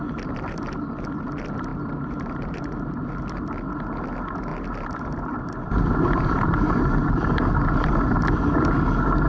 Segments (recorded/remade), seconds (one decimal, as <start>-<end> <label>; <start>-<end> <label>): 0.0-1.7 recorded; 1.7-3.1 remade; 3.1-4.5 recorded; 4.5-7.9 remade; 7.9-9.3 recorded